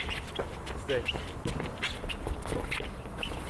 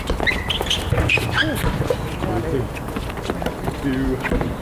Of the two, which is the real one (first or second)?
second